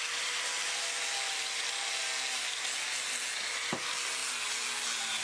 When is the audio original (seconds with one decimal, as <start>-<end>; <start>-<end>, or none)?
0.0-5.2